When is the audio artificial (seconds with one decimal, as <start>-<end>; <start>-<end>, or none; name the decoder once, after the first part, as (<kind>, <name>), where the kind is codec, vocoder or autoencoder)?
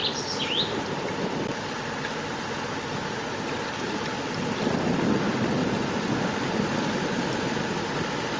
3.0-4.1 (vocoder, BigVGAN v2)